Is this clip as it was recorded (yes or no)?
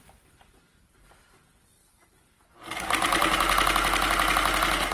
yes